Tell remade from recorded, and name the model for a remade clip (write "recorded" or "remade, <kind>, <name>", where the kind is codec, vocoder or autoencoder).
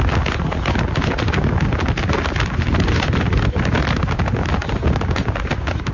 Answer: recorded